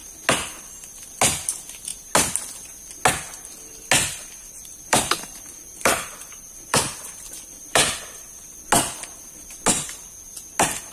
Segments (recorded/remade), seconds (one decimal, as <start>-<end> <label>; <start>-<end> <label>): 0.0-4.0 recorded; 4.0-8.6 remade; 8.6-10.9 recorded